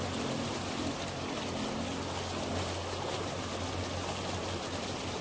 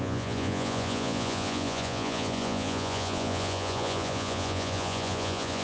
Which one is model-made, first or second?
second